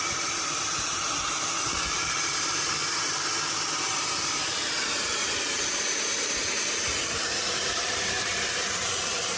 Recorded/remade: remade